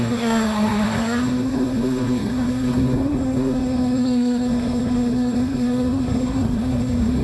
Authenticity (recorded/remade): remade